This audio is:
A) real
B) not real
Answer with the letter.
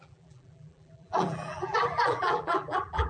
B